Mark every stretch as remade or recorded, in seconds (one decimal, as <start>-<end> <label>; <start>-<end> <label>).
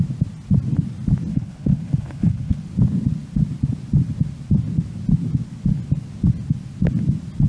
0.0-1.3 recorded; 1.3-2.6 remade; 2.6-7.5 recorded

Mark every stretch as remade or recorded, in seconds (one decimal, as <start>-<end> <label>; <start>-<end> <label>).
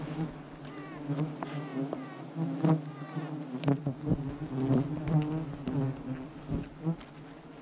0.0-7.6 recorded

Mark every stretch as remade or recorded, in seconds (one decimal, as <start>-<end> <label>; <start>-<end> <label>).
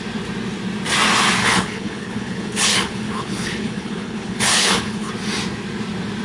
0.0-1.4 recorded; 1.4-5.1 remade; 5.1-6.2 recorded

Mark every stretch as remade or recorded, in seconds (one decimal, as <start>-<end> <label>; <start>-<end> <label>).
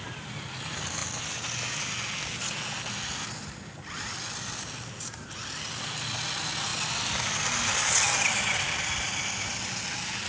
0.0-10.3 recorded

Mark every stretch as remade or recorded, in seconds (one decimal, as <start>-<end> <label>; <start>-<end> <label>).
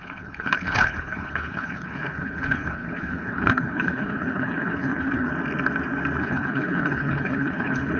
0.0-5.3 remade; 5.3-6.2 recorded; 6.2-8.0 remade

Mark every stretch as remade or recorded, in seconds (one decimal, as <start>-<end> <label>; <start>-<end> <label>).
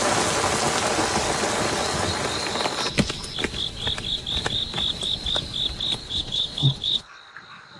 0.0-6.0 recorded; 6.0-7.1 remade; 7.1-7.8 recorded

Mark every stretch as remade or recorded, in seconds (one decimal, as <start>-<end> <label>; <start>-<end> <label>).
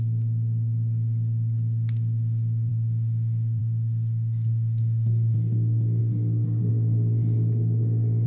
0.0-8.3 recorded